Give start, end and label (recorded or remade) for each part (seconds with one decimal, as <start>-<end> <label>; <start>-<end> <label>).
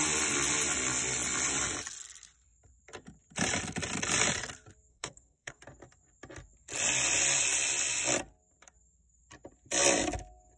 0.0-4.9 recorded; 4.9-5.6 remade; 5.6-10.6 recorded